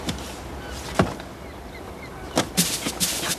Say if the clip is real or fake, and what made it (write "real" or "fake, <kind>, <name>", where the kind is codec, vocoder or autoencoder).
real